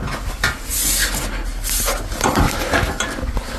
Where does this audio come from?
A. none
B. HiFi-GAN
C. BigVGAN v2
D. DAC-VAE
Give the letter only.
A